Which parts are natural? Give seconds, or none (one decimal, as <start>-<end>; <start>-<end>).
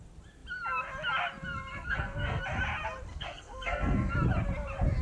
0.0-1.7; 2.4-3.1; 4.1-5.0